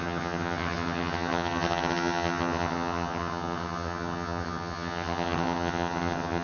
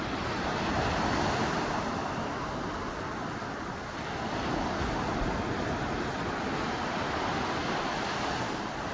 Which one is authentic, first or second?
second